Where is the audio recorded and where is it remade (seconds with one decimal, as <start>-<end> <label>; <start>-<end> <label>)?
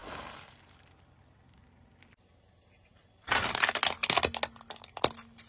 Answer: 0.0-5.5 recorded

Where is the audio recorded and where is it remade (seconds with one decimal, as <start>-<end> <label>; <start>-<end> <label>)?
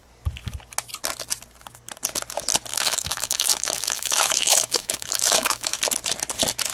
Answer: 0.0-2.7 recorded; 2.7-5.8 remade; 5.8-6.7 recorded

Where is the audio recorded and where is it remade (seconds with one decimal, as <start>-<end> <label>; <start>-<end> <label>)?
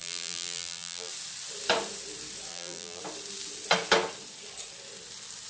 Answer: 0.0-1.1 remade; 1.1-2.5 recorded; 2.5-3.0 remade; 3.0-5.5 recorded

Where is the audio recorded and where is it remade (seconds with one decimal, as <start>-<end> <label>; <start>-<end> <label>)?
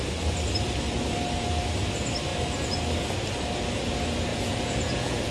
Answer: 0.0-4.3 recorded; 4.3-5.3 remade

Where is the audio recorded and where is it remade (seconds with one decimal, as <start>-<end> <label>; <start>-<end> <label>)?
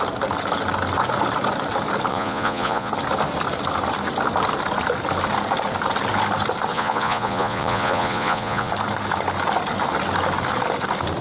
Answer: 0.0-2.1 recorded; 2.1-2.9 remade; 2.9-6.7 recorded; 6.7-8.7 remade; 8.7-11.2 recorded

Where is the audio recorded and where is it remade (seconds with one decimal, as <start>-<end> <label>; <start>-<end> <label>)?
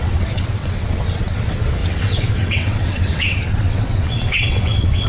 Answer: 0.0-5.1 remade